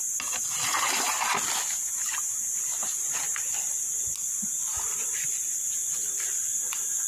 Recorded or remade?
recorded